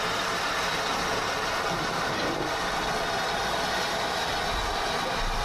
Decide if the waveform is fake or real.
real